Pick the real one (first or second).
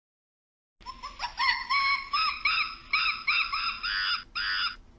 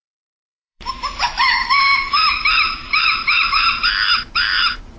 first